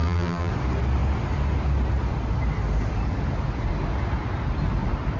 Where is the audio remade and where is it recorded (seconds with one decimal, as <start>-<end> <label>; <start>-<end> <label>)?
0.0-0.5 remade; 0.5-5.2 recorded